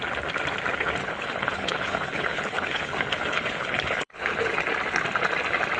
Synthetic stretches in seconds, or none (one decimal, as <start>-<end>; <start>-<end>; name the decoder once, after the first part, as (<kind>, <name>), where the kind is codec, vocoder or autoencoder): 1.0-4.5 (codec, HILCodec)